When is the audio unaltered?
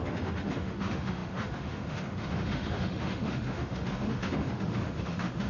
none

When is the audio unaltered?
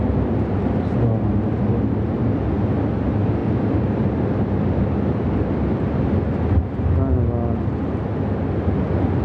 0.0-9.2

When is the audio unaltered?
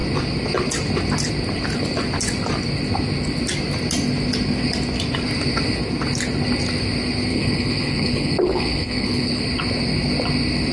0.0-7.3; 9.4-10.7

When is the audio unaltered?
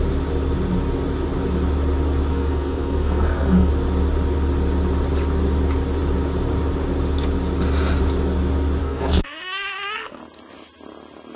0.0-2.3; 3.7-8.8; 10.2-11.4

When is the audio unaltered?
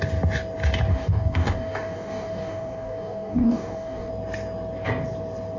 0.0-0.9; 4.1-5.6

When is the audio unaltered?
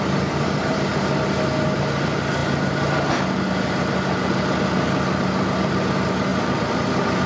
0.0-7.3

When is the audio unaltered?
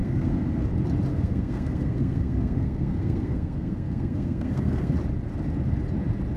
0.7-1.1; 4.9-6.4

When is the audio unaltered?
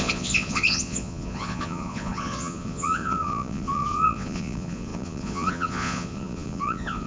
none